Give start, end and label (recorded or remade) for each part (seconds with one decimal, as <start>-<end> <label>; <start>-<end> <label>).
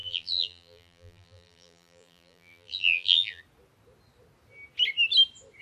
0.0-3.4 remade; 3.4-5.6 recorded